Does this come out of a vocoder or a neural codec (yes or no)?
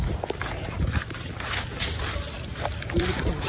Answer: no